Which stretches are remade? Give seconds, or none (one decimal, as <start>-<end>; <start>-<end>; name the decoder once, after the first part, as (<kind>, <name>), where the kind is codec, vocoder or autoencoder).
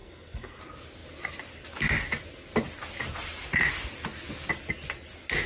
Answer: 0.0-0.6 (codec, SNAC)